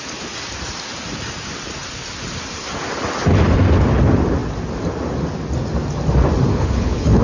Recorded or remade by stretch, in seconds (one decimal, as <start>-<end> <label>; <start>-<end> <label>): 0.0-6.5 recorded; 6.5-7.2 remade